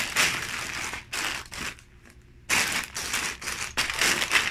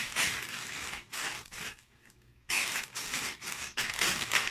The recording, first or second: first